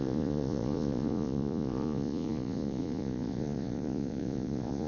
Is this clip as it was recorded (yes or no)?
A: no